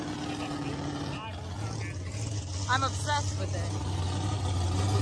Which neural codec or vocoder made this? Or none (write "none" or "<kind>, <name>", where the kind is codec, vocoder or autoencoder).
none